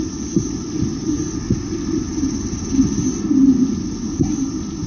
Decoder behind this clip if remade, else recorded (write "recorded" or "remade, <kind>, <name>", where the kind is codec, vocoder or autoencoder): remade, vocoder, BigVGAN v2